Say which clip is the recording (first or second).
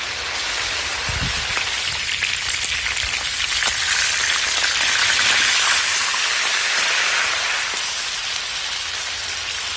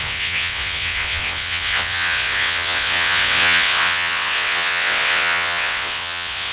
first